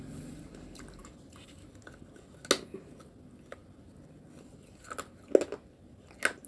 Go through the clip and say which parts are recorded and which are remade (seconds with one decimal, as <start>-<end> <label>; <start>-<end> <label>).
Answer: 0.0-6.5 recorded